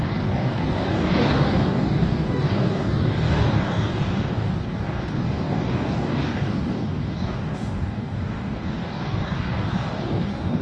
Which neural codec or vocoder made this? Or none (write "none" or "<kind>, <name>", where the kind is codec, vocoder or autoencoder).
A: codec, DAC